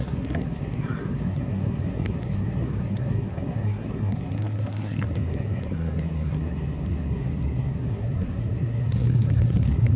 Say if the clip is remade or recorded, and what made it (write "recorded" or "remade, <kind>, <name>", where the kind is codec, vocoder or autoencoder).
remade, codec, SNAC